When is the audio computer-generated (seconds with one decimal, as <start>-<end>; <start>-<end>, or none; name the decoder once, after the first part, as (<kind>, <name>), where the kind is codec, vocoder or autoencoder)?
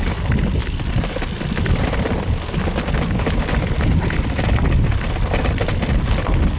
none